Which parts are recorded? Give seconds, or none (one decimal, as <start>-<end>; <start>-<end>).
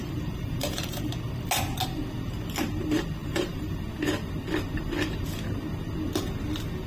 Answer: 1.1-3.2; 3.8-6.9